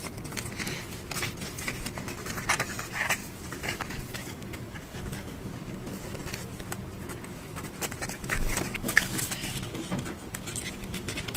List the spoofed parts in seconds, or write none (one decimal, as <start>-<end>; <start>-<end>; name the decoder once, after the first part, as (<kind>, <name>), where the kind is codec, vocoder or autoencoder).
3.2-5.5 (codec, DAC); 8.7-9.7